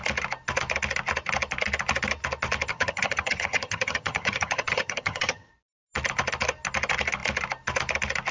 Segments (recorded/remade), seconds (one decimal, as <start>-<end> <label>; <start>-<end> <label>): 0.0-2.7 recorded; 2.7-5.5 remade; 5.5-8.3 recorded